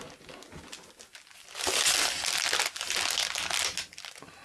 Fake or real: real